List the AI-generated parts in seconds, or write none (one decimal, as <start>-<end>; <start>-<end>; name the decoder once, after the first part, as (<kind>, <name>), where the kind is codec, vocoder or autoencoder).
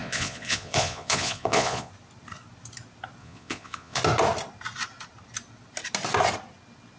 0.0-1.9 (vocoder, Vocos); 3.2-4.0